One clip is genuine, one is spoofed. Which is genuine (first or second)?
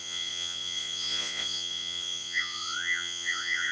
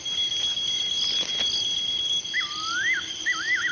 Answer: second